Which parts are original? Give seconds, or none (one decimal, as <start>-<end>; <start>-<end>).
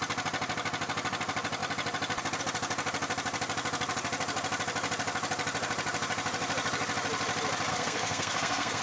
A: 0.0-7.7